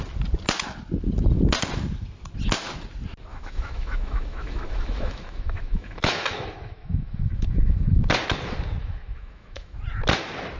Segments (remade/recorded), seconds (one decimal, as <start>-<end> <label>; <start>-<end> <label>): 0.0-3.3 recorded; 3.3-8.1 remade; 8.1-8.8 recorded; 8.8-9.8 remade; 9.8-10.6 recorded